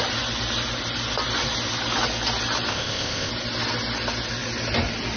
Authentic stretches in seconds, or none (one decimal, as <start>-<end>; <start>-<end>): 0.0-2.7; 3.3-5.2